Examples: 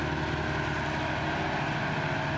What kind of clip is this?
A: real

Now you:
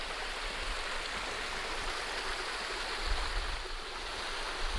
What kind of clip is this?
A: real